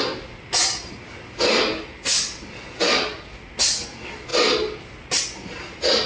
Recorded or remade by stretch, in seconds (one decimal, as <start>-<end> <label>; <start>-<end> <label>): 0.0-6.1 recorded